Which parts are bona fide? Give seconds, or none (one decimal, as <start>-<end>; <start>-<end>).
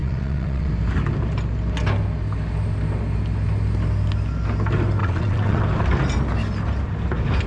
0.7-5.0; 5.6-7.5